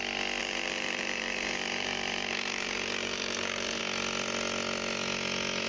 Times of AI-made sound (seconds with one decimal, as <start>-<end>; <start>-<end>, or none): 0.4-3.8